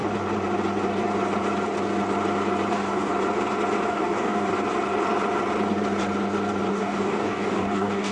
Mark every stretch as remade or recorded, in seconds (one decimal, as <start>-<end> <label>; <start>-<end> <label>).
0.0-2.7 recorded; 2.7-3.1 remade; 3.1-3.9 recorded; 3.9-4.5 remade; 4.5-6.7 recorded; 6.7-8.1 remade